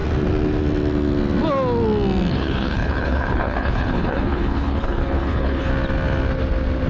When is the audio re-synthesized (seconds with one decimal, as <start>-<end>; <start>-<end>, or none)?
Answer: 2.3-5.7